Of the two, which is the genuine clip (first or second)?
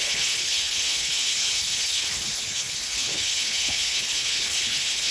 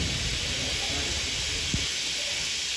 second